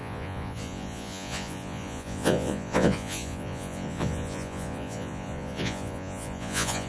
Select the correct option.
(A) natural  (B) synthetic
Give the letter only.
B